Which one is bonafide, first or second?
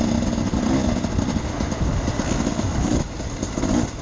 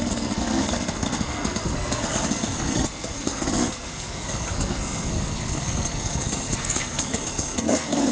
first